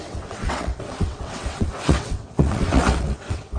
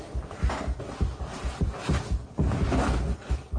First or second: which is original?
second